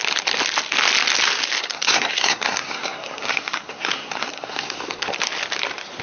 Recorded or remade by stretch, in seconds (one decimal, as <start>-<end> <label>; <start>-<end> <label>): 0.0-1.6 recorded; 1.6-5.1 remade; 5.1-6.0 recorded